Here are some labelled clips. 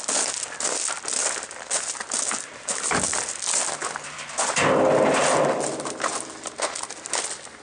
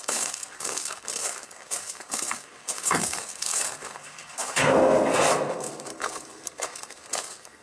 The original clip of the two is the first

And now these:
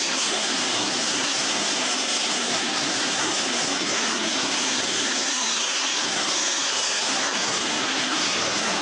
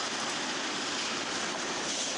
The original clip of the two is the second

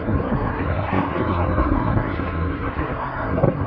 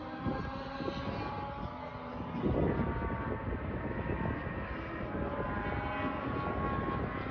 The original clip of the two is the second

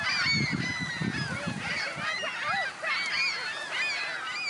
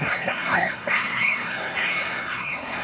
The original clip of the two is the first